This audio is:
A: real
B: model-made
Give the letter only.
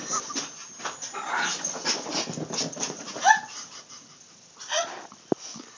A